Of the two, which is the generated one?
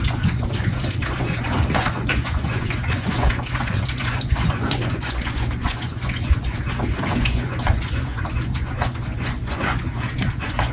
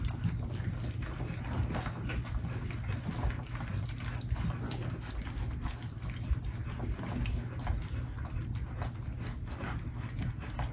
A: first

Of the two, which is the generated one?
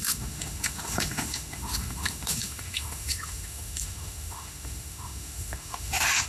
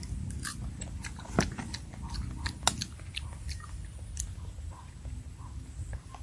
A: first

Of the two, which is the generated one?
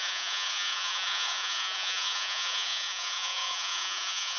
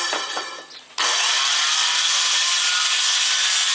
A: first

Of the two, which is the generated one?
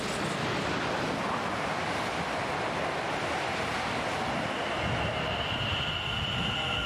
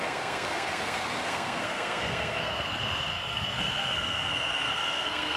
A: second